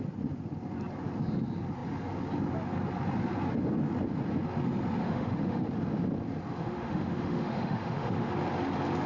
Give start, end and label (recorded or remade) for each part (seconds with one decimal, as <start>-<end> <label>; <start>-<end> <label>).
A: 0.0-5.0 recorded; 5.0-5.7 remade; 5.7-6.6 recorded; 6.6-8.3 remade; 8.3-9.1 recorded